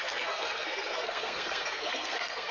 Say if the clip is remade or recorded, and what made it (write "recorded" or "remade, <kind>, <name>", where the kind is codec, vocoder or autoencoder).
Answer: remade, codec, SNAC